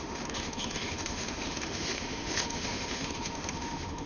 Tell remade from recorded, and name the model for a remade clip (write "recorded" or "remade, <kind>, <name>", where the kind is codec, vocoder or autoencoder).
remade, autoencoder, DAC-VAE